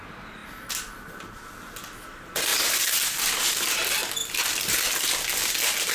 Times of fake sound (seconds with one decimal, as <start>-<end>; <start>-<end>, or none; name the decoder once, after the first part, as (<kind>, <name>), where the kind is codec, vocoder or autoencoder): 0.4-1.4 (vocoder, BigVGAN v2); 2.5-3.4; 4.2-5.1